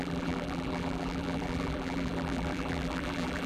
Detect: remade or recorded remade